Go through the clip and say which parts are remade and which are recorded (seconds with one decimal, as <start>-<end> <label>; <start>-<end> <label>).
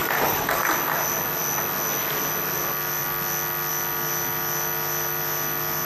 0.0-0.6 remade; 0.6-5.9 recorded